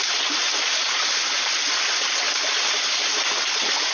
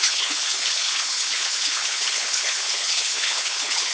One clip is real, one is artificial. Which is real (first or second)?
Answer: first